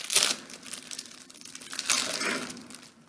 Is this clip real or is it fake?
real